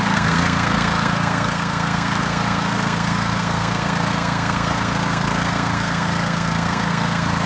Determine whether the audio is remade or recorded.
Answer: remade